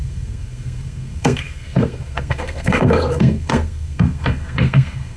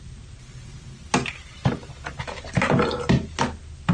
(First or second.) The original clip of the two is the second